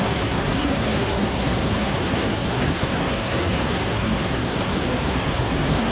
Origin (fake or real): fake